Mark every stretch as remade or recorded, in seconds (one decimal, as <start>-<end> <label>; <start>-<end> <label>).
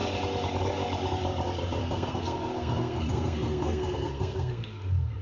0.0-1.8 recorded; 1.8-5.2 remade